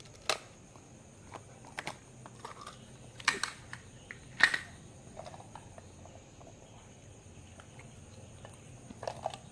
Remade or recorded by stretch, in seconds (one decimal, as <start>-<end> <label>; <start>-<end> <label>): 0.0-9.5 recorded